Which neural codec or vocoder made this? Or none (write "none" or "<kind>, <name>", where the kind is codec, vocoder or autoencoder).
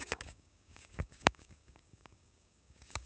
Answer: codec, DAC